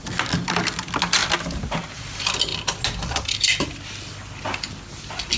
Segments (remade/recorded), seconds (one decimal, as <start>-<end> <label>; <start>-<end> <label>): 0.0-5.4 recorded